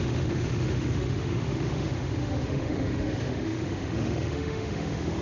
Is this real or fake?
fake